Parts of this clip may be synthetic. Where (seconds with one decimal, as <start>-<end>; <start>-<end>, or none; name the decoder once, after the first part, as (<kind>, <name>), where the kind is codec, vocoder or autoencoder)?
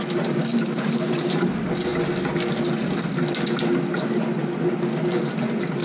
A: 0.5-1.5 (vocoder, BigVGAN v2)